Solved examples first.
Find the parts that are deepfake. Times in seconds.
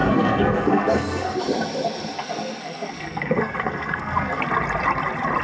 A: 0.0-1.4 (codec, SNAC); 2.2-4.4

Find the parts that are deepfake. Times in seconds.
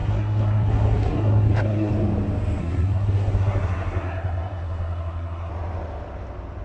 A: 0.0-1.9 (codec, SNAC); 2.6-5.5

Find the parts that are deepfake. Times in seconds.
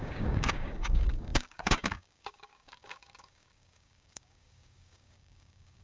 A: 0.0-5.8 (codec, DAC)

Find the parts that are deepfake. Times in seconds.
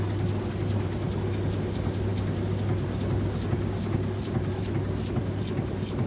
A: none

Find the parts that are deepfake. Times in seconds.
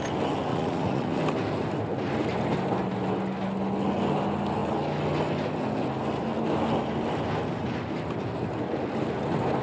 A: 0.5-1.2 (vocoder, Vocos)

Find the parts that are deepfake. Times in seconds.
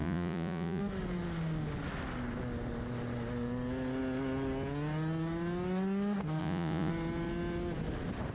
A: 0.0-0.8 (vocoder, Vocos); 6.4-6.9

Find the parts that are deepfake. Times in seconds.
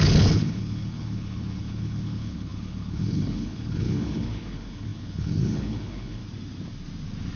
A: 0.0-6.2 (codec, HILCodec)